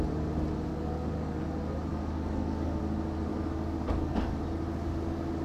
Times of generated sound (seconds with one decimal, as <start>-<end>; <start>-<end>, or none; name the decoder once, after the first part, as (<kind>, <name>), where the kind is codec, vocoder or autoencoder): 0.7-1.4 (codec, DAC); 1.9-2.8; 3.3-4.4